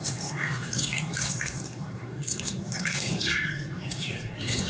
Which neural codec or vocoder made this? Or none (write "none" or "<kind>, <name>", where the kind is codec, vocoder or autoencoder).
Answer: codec, SNAC